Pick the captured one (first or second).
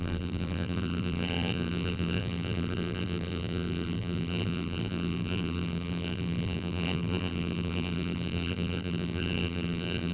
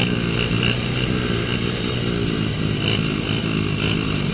second